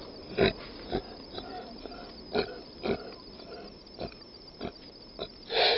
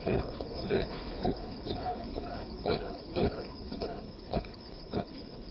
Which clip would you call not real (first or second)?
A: second